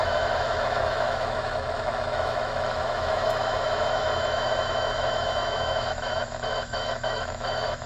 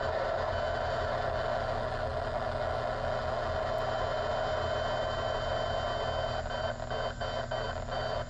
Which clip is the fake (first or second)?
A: first